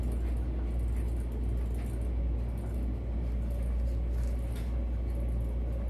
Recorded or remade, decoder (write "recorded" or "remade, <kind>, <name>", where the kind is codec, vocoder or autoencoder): recorded